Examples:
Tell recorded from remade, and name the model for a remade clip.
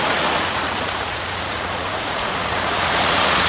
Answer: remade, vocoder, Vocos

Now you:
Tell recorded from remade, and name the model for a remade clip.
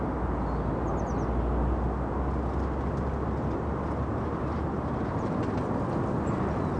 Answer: recorded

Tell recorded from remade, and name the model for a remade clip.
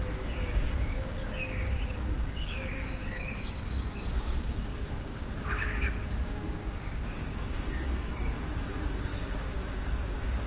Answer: remade, codec, DAC